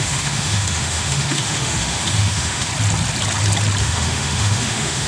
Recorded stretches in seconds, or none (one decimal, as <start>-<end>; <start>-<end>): 2.7-3.8